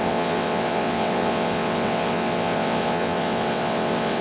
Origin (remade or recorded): remade